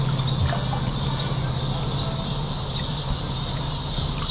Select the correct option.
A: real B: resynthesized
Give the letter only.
A